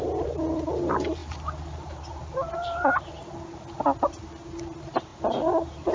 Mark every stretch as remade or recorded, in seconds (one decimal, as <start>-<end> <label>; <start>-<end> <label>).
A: 0.0-5.9 recorded